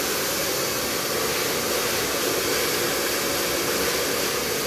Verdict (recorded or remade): recorded